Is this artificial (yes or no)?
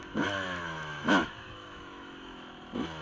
yes